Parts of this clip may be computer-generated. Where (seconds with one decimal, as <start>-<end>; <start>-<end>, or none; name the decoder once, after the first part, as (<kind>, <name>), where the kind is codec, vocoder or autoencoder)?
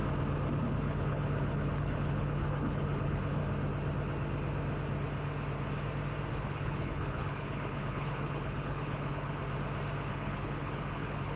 0.6-3.4 (codec, HILCodec); 6.3-9.4; 10.1-11.3